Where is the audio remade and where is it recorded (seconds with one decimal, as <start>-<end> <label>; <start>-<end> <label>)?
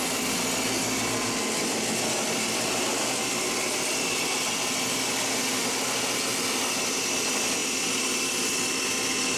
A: 0.0-9.4 recorded